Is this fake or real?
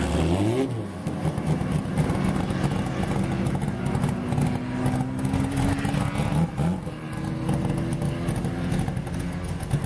real